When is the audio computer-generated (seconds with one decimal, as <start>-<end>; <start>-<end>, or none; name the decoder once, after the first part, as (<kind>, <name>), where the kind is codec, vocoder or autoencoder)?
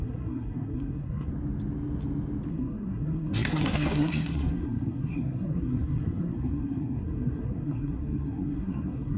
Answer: 0.0-1.3 (codec, SNAC); 2.5-9.2